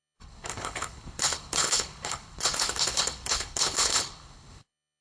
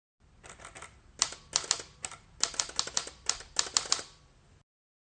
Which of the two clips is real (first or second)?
second